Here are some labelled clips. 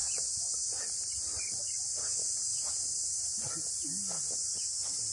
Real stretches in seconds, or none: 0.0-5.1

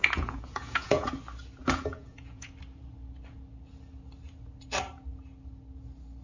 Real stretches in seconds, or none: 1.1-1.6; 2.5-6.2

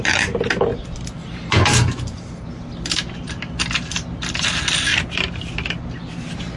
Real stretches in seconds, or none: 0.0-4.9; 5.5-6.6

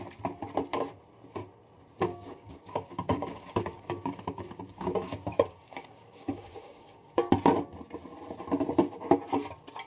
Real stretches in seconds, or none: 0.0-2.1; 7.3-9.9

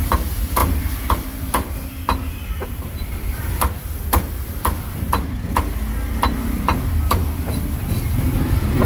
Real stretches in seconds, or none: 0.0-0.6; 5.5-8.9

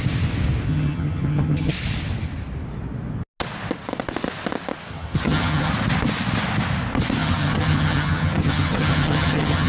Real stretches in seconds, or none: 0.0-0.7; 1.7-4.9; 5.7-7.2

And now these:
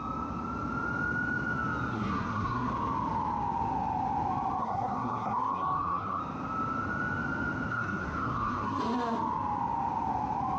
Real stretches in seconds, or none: 0.0-1.9; 2.7-4.6; 6.2-7.7; 8.8-10.6